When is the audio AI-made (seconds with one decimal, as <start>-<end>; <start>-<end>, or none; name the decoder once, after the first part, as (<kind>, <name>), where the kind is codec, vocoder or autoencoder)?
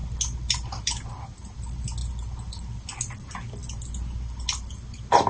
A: none